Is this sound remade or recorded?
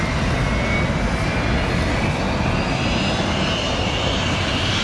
recorded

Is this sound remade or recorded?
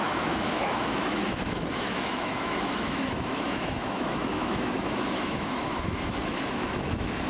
remade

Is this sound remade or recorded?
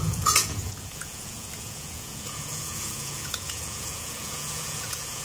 remade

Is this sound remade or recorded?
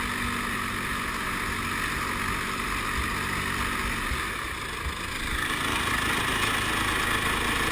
recorded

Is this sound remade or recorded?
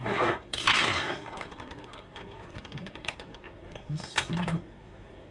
remade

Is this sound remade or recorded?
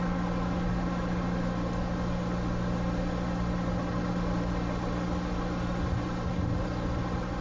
recorded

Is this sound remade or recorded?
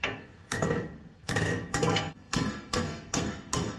remade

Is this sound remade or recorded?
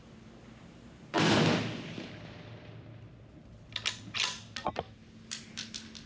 recorded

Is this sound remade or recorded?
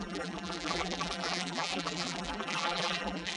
remade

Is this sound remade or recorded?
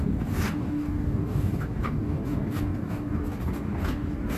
remade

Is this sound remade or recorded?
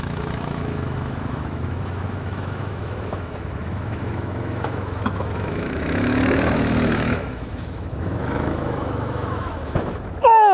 remade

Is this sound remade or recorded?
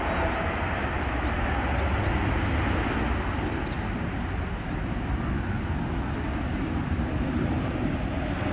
recorded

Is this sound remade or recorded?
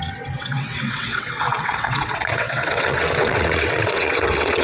remade